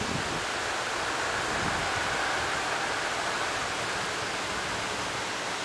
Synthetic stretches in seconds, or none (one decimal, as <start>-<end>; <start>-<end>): none